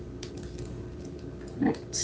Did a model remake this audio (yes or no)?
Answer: no